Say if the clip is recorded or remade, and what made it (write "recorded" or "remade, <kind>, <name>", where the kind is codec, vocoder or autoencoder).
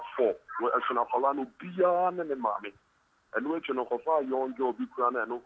recorded